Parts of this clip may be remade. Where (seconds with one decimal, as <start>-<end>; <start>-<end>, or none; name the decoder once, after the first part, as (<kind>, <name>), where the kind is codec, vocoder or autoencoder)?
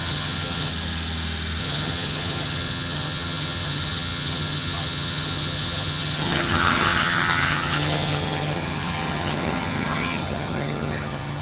0.0-0.7 (vocoder, HiFi-GAN); 1.6-11.4